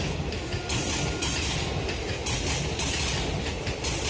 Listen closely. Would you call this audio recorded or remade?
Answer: recorded